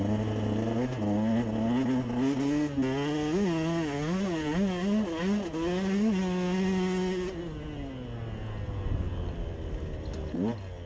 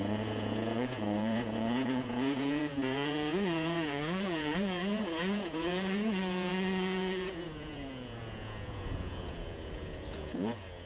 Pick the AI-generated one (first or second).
second